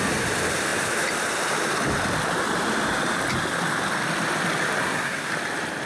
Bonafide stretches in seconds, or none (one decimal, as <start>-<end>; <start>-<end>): 0.0-4.8; 5.3-5.8